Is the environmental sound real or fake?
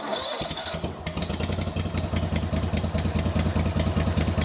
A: real